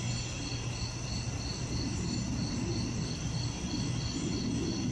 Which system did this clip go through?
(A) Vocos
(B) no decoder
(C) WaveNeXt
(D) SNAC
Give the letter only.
B